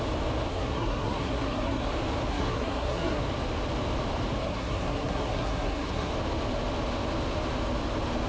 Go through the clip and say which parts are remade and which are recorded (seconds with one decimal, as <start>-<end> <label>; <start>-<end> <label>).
0.0-0.5 recorded; 0.5-1.9 remade; 1.9-2.3 recorded; 2.3-3.2 remade; 3.2-4.4 recorded; 4.4-6.1 remade; 6.1-8.3 recorded